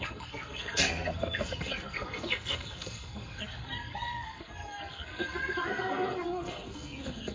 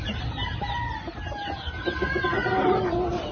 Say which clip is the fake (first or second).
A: first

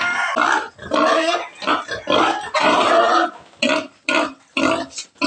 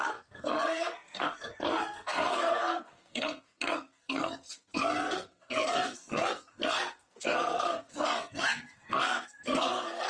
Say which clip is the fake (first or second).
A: second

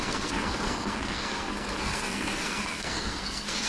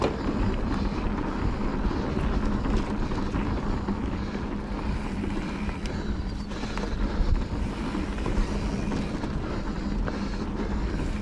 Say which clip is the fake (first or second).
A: first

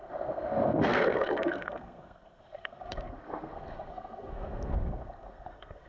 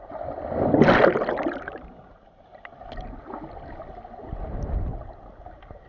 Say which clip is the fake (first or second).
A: first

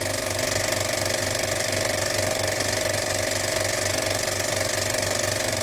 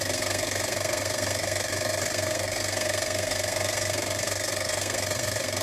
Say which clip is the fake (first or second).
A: second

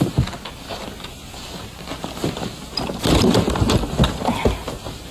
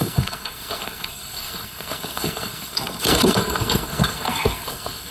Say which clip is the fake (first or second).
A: second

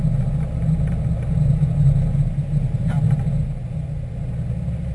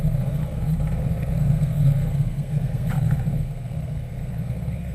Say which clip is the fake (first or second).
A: second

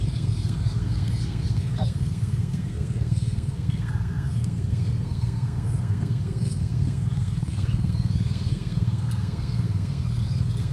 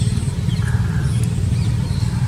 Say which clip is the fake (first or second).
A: first